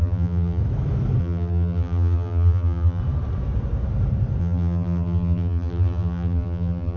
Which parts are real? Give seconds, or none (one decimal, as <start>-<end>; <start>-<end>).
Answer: 0.6-1.2; 3.0-4.4